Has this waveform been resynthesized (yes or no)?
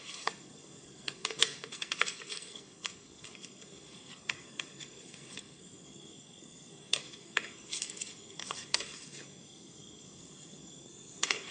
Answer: yes